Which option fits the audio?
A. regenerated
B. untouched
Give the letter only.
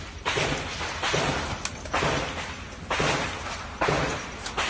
B